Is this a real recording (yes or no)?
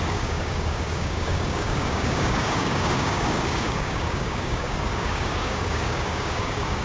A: no